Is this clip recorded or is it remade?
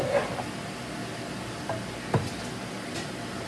recorded